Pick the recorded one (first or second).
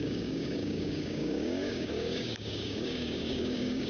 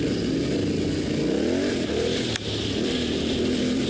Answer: second